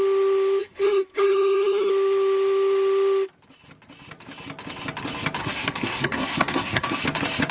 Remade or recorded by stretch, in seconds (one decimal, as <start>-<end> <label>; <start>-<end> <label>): 0.0-0.6 recorded; 0.6-1.9 remade; 1.9-5.4 recorded; 5.4-7.0 remade; 7.0-7.5 recorded

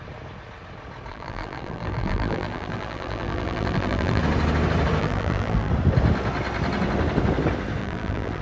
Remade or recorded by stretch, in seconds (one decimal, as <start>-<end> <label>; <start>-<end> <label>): 0.0-1.1 recorded; 1.1-4.2 remade; 4.2-5.0 recorded; 5.0-5.7 remade; 5.7-7.8 recorded; 7.8-8.4 remade

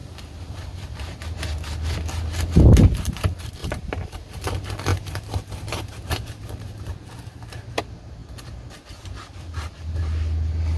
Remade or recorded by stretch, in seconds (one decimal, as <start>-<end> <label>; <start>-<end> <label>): 0.0-1.2 remade; 1.2-3.6 recorded; 3.6-4.3 remade; 4.3-4.9 recorded; 4.9-7.8 remade; 7.8-10.8 recorded